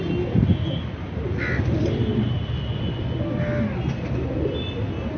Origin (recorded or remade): recorded